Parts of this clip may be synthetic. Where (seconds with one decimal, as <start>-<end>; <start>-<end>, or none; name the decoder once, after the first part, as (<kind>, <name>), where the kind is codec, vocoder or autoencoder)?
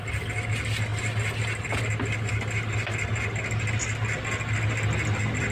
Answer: none